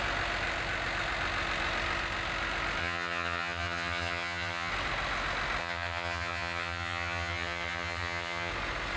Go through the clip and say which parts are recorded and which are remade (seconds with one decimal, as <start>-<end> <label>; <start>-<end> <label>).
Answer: 0.0-2.8 recorded; 2.8-4.7 remade; 4.7-5.6 recorded; 5.6-8.5 remade; 8.5-9.0 recorded